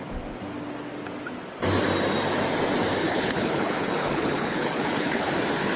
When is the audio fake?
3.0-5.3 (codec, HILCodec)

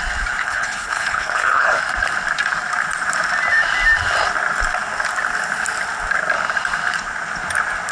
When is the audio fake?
0.4-1.8 (codec, HILCodec)

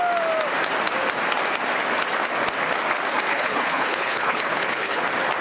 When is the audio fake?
3.3-5.0 (codec, HILCodec)

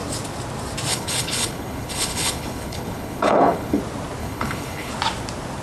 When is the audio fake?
0.9-3.8 (codec, HILCodec); 4.2-4.9